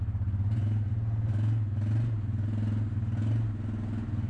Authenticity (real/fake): real